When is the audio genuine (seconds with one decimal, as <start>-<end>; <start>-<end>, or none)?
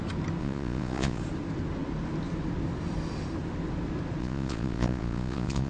0.0-0.4; 1.2-4.2